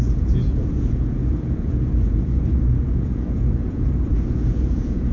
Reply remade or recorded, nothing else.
remade